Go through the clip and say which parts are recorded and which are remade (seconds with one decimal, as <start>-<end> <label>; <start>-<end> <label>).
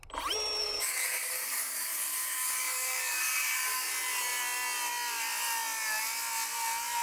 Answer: 0.0-0.6 recorded; 0.6-3.9 remade; 3.9-7.0 recorded